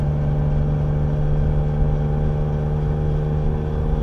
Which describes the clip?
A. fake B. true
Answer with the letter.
B